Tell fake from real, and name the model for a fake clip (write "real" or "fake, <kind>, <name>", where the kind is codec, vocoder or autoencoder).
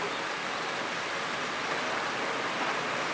real